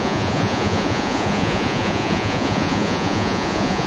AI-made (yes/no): yes